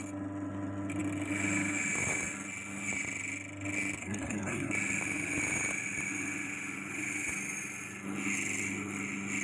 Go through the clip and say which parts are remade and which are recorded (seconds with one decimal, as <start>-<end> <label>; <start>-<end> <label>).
0.0-4.0 recorded; 4.0-4.7 remade; 4.7-9.4 recorded